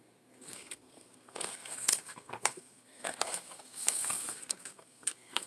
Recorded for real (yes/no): no